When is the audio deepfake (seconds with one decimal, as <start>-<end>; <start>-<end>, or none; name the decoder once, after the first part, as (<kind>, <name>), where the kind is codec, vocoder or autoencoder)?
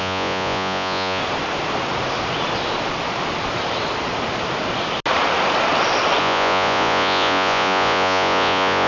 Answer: 0.0-1.2 (vocoder, Vocos); 6.2-8.9